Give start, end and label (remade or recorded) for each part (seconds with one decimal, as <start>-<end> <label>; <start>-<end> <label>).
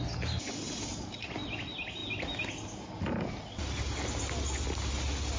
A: 0.0-5.4 recorded